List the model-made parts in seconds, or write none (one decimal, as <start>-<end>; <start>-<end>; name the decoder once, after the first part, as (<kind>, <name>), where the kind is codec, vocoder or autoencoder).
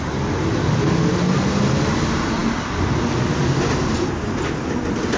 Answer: none